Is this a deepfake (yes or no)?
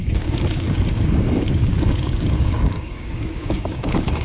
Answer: yes